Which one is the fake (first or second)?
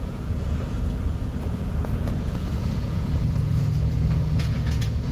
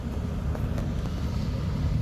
first